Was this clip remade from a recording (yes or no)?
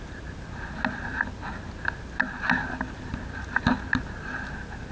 no